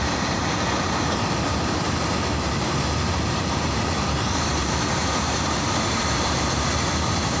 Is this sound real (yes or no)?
no